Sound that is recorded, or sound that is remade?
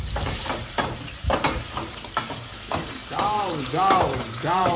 remade